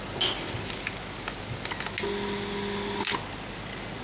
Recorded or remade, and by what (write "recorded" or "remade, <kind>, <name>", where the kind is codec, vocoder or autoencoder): recorded